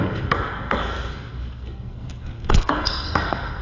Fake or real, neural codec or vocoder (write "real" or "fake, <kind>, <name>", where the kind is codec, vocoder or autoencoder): fake, codec, SNAC